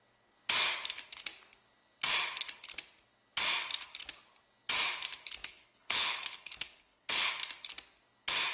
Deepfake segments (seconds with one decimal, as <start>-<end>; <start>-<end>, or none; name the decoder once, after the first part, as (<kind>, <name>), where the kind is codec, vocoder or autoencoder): 5.4-7.3 (codec, HILCodec)